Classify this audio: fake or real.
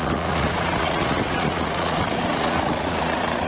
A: fake